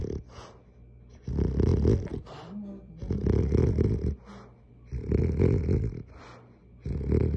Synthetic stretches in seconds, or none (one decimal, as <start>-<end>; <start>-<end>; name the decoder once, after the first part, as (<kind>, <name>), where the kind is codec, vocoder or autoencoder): none